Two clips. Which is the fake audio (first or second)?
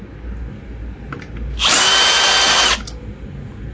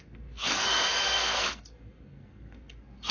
second